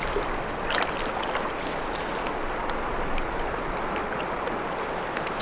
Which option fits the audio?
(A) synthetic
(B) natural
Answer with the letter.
B